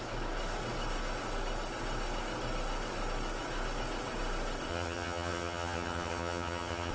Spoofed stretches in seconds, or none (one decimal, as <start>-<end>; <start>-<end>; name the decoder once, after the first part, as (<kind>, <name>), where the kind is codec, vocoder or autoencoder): 4.7-6.9 (vocoder, HiFi-GAN)